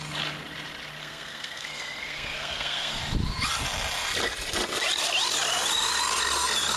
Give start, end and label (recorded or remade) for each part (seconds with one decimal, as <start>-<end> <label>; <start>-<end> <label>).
0.0-1.0 recorded; 1.0-3.0 remade; 3.0-6.8 recorded